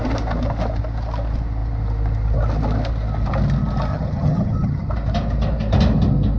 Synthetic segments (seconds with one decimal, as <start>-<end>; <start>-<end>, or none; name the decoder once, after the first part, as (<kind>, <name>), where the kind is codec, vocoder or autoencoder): 3.9-4.9 (vocoder, HiFi-GAN)